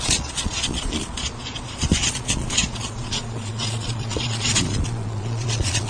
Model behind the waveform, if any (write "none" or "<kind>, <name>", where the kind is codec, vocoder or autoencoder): vocoder, Vocos